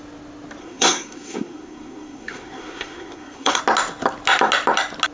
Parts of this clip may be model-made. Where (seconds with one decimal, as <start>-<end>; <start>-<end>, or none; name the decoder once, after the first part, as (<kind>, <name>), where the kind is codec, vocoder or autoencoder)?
0.6-3.6 (codec, SNAC)